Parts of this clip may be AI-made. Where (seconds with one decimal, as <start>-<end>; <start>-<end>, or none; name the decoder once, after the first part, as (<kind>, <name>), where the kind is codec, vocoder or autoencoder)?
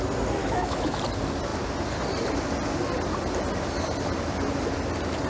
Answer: 0.4-1.0 (autoencoder, DAC-VAE)